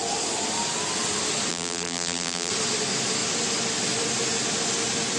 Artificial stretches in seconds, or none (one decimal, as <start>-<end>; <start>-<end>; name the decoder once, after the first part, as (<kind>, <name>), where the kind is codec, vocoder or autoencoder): 1.5-2.5 (vocoder, BigVGAN v2)